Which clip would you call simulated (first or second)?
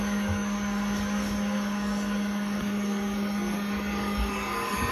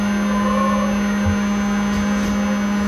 first